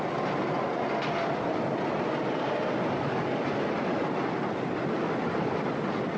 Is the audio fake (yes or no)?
no